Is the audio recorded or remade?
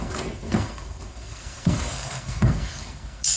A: remade